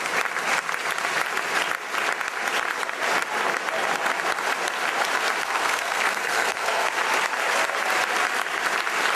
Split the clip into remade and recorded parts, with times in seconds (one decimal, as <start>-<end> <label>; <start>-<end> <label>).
0.0-5.4 recorded; 5.4-6.9 remade; 6.9-9.2 recorded